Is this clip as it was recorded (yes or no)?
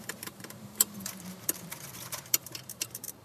no